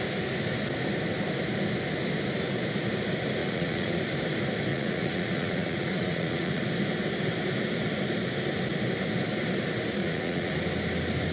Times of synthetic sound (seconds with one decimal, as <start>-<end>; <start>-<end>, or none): 3.4-4.0; 4.7-6.6; 10.0-10.5